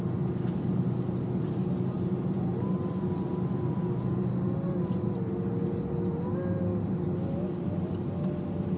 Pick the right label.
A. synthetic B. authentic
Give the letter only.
B